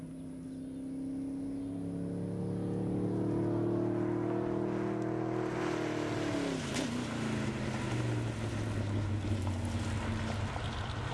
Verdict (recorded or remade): recorded